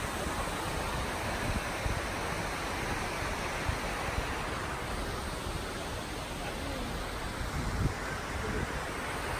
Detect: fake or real real